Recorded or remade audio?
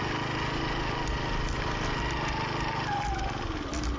recorded